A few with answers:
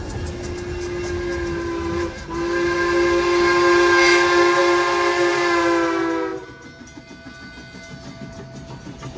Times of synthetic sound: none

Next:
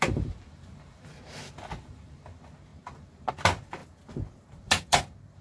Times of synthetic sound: 0.0-3.8 (vocoder, BigVGAN v2); 4.4-5.4

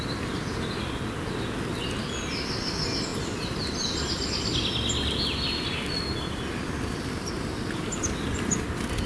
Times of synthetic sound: none